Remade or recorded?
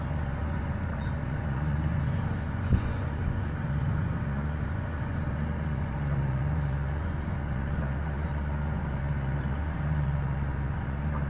remade